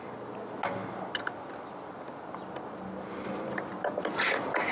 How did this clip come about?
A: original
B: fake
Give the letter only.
A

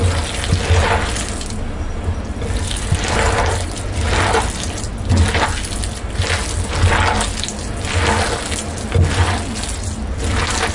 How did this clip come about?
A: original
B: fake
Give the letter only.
A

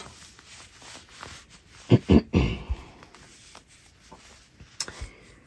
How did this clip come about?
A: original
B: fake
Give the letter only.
A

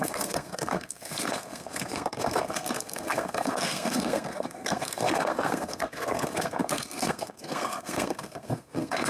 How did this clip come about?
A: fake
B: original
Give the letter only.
A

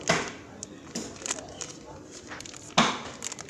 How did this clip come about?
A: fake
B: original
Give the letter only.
B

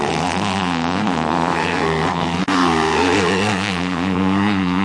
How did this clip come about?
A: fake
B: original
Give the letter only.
A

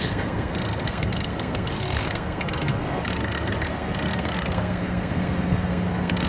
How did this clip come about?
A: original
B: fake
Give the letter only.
B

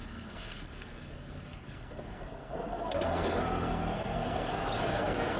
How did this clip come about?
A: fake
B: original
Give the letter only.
A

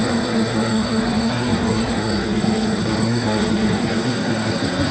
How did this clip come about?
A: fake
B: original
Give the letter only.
A